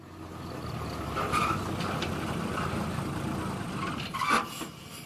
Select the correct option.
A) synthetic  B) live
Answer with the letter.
B